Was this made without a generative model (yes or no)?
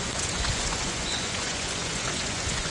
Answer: no